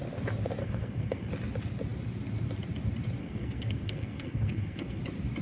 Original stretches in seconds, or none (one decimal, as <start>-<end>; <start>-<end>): 0.0-0.6; 1.3-3.2; 5.0-5.4